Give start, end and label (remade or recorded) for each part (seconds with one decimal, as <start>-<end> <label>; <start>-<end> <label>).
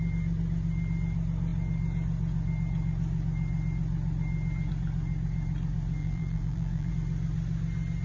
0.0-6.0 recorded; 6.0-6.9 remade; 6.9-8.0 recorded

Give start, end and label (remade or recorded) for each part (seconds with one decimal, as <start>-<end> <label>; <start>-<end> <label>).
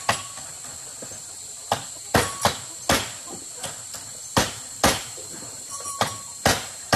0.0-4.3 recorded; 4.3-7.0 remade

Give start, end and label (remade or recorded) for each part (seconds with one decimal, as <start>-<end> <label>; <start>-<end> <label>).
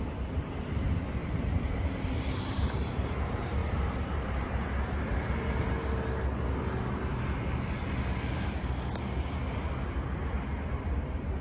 0.0-5.8 remade; 5.8-10.7 recorded; 10.7-11.4 remade